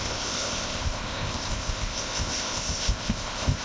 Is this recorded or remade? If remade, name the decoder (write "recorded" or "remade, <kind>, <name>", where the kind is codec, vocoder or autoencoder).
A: remade, codec, ZipCodec